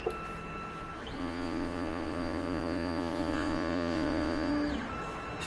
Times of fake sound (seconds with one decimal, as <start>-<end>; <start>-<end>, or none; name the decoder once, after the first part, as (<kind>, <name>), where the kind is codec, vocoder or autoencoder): 1.2-4.5 (vocoder, Vocos)